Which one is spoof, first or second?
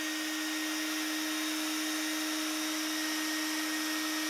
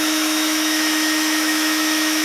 second